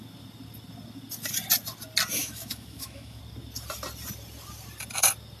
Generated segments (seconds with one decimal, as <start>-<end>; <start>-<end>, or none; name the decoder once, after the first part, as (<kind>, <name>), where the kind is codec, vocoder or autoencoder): 2.2-3.2 (autoencoder, DAC-VAE)